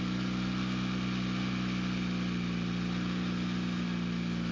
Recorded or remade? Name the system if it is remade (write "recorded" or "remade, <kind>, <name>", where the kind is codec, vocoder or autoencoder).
recorded